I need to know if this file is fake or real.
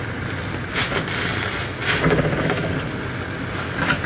real